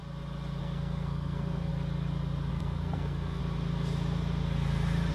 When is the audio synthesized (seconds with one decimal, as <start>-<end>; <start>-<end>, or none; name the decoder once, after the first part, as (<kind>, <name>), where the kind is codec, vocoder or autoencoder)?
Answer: 0.6-1.7 (codec, SNAC); 2.5-3.4